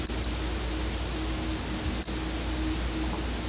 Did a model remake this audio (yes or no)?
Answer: no